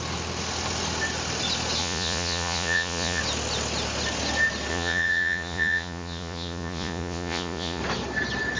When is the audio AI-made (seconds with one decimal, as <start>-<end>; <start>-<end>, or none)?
1.8-3.2; 4.7-7.8